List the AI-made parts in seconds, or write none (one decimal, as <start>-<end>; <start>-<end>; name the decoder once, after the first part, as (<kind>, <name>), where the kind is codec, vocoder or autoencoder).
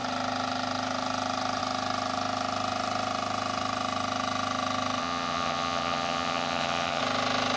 5.0-7.0 (vocoder, HiFi-GAN)